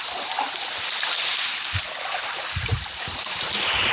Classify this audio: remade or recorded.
recorded